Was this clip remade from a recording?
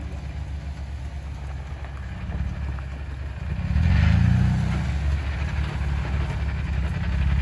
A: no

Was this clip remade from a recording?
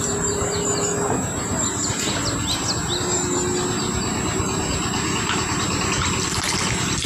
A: no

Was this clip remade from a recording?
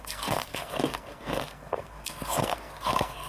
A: yes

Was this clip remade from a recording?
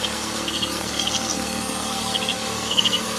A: yes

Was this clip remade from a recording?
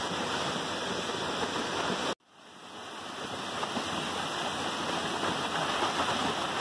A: no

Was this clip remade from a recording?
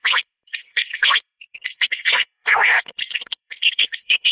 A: yes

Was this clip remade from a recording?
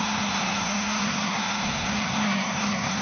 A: yes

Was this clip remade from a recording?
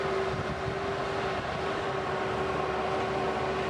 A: no